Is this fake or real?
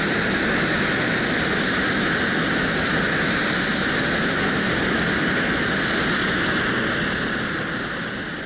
real